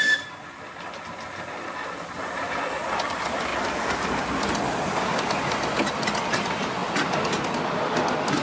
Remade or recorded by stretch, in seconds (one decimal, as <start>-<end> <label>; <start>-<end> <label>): 0.0-8.4 recorded